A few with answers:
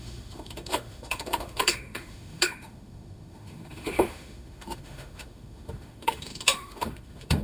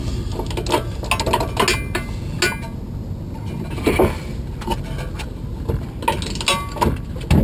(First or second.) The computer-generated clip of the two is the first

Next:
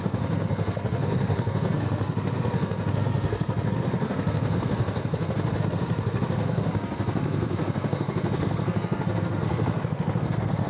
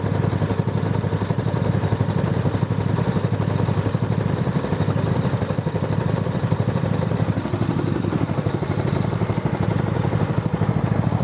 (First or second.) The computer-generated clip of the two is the first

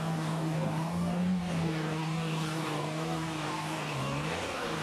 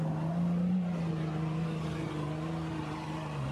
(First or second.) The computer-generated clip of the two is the first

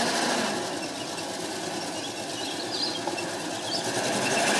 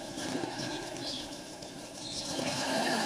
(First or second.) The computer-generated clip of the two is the second